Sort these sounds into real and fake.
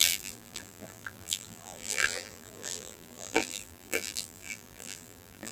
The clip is fake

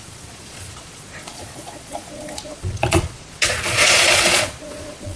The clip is fake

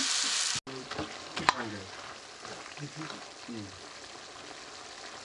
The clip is real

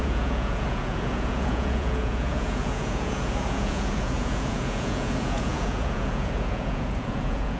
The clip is fake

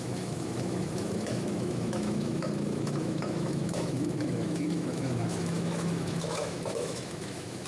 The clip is fake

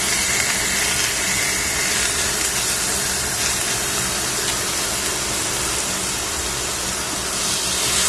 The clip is real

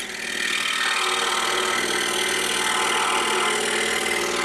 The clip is real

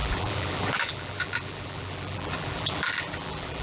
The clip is fake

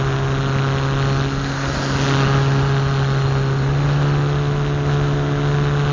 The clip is real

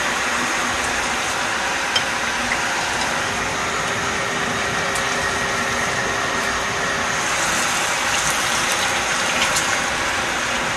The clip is real